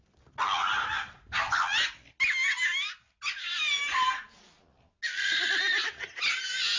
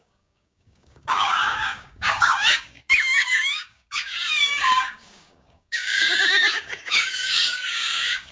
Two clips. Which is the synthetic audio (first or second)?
second